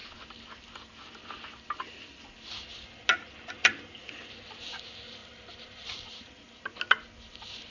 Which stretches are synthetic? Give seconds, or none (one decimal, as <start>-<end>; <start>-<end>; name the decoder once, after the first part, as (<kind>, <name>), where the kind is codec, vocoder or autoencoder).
5.2-6.6 (vocoder, BigVGAN v2)